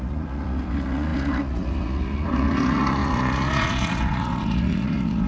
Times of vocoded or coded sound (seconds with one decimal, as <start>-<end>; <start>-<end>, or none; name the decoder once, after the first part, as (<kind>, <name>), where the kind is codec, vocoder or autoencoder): 0.0-5.3 (vocoder, Vocos)